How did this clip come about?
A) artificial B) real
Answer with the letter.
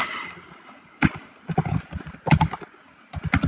B